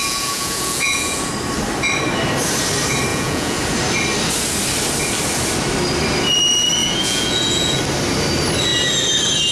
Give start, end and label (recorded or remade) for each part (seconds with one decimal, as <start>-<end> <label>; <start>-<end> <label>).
0.0-1.3 remade; 1.3-3.1 recorded; 3.1-3.6 remade; 3.6-6.8 recorded; 6.8-7.8 remade; 7.8-9.5 recorded